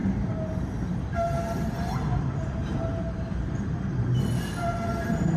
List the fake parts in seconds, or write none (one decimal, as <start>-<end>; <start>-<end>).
none